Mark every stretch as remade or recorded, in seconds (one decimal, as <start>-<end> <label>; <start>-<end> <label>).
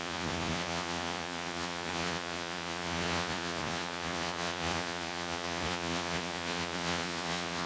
0.0-7.7 remade